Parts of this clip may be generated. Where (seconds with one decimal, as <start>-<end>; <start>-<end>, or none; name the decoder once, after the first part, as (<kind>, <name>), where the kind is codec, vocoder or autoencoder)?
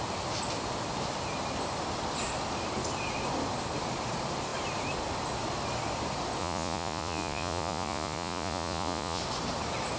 6.4-9.2 (vocoder, Vocos)